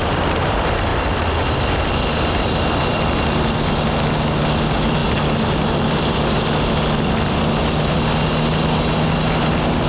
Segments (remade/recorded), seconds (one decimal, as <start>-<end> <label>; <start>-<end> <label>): 0.0-9.9 recorded